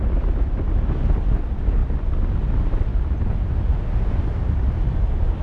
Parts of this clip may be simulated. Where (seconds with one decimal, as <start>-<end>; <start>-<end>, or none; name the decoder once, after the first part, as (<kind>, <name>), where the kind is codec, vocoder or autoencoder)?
none